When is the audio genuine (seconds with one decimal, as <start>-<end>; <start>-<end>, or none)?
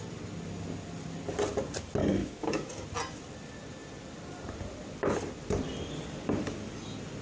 0.0-2.2; 2.7-7.2